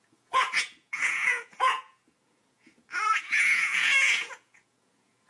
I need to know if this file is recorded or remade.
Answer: remade